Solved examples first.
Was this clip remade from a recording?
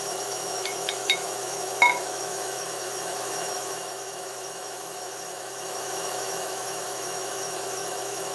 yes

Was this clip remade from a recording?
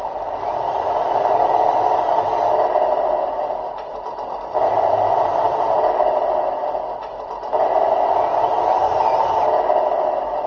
no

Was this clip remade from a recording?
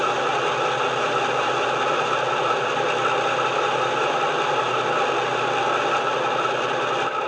no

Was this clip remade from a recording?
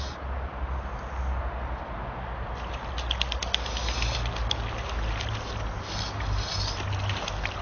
no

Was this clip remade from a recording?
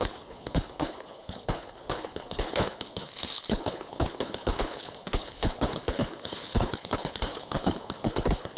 yes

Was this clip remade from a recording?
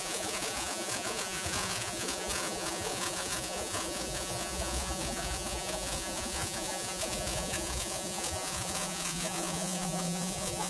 yes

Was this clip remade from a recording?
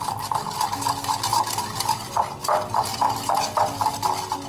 no